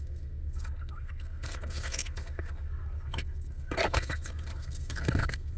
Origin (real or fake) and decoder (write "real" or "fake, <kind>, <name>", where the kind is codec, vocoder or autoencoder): fake, codec, SNAC